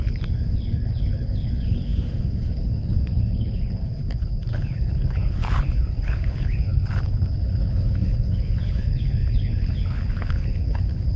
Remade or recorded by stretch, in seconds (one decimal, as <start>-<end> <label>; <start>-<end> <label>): 0.0-11.2 remade